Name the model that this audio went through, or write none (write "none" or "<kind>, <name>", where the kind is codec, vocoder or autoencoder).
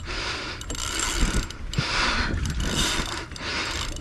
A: none